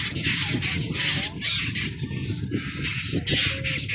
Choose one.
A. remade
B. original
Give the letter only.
B